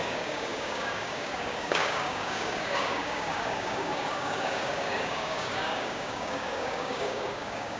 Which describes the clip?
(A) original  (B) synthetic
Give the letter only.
B